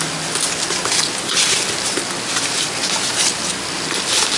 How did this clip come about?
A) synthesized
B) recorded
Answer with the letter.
B